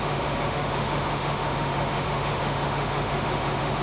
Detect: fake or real fake